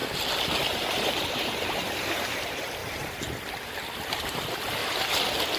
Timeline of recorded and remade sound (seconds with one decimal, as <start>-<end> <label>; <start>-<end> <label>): 0.0-0.7 recorded; 0.7-2.8 remade; 2.8-4.1 recorded; 4.1-5.6 remade